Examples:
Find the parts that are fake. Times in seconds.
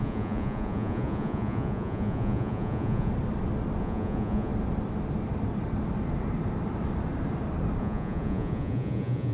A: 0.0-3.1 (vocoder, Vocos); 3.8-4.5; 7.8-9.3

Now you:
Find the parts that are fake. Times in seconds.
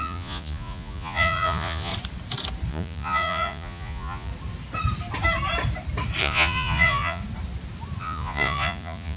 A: 0.0-1.9 (vocoder, Vocos); 2.7-4.3; 6.2-7.2; 8.0-9.2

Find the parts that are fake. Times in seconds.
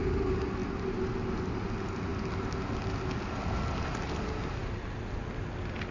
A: none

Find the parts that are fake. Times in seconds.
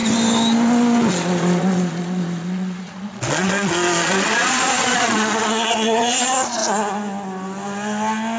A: 1.1-6.6 (vocoder, Vocos)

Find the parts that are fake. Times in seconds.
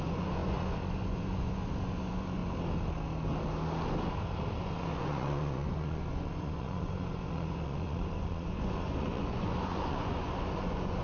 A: 0.0-2.4 (vocoder, Vocos); 4.6-11.0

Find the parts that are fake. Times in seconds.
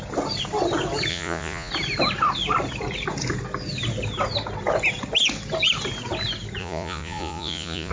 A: 1.1-1.7 (vocoder, Vocos); 6.6-7.9